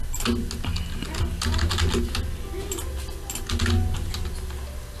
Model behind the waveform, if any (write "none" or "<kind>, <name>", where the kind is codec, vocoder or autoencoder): none